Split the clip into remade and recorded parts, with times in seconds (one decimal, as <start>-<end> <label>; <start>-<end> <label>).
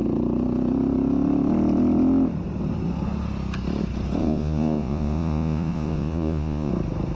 0.0-4.2 recorded; 4.2-6.7 remade; 6.7-7.2 recorded